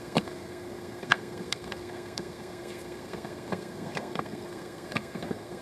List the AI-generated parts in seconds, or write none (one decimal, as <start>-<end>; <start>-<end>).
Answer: 0.0-5.6